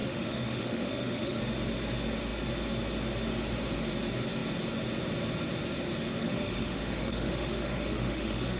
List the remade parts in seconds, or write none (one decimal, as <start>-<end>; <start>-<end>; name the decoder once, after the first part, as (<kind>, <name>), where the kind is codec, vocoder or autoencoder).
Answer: 0.0-1.4 (autoencoder, DAC-VAE); 6.2-8.6